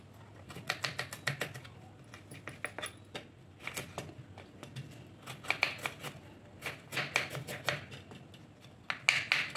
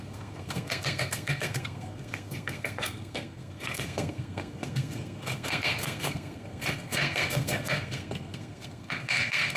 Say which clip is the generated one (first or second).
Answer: second